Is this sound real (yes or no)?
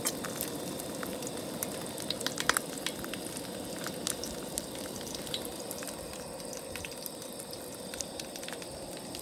yes